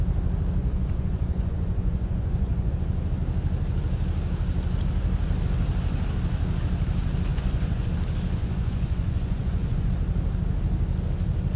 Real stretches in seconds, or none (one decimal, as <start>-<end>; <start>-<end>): 0.0-0.6; 2.7-7.3; 7.9-8.4; 9.9-11.6